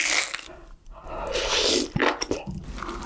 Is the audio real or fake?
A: real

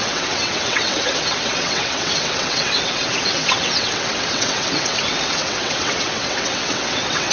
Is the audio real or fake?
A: fake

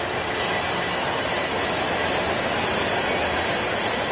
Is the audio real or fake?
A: real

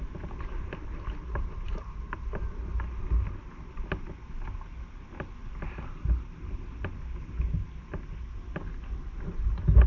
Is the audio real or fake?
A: real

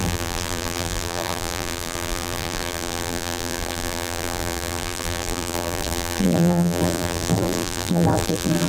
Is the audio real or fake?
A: fake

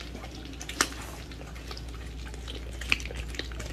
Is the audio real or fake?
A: real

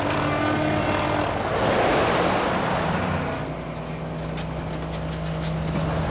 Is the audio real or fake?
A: real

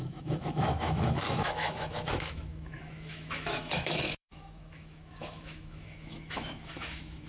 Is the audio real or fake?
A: fake